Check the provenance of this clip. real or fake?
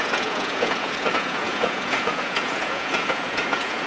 fake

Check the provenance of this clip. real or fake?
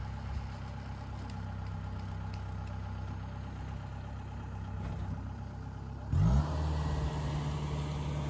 real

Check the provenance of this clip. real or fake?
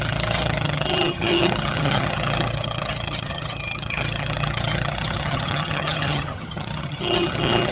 fake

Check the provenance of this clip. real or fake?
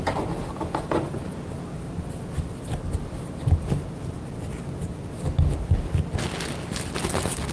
real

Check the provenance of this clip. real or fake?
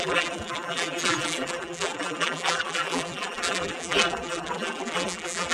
fake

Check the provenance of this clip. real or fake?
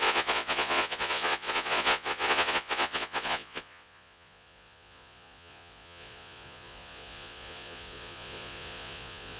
fake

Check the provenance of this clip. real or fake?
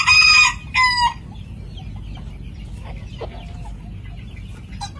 real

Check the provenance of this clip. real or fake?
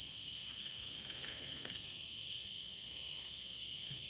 fake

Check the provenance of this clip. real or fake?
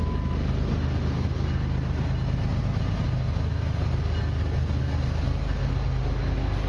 real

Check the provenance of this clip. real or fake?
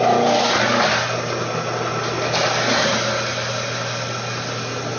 real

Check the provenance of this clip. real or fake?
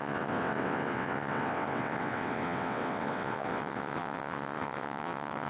fake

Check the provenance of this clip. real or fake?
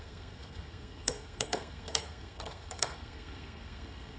fake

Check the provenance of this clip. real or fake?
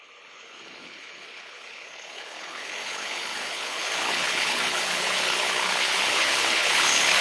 fake